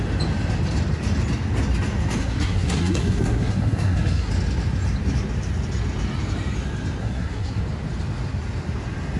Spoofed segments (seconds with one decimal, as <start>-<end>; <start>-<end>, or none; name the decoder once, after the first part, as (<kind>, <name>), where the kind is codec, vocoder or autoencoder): 2.2-4.3 (codec, SNAC); 7.0-7.6